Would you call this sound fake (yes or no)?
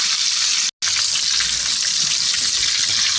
no